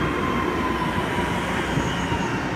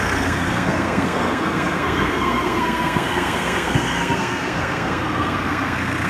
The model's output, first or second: second